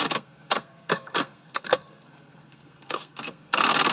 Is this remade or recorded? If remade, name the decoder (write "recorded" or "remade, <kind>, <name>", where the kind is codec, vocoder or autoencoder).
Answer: remade, codec, SNAC